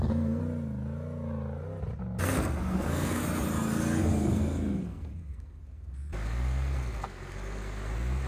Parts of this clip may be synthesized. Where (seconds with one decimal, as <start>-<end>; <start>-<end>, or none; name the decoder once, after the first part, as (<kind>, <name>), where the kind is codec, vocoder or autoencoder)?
0.0-0.4 (codec, SNAC); 2.2-3.2; 4.0-8.3